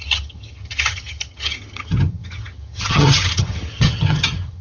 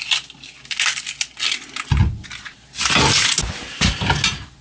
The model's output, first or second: first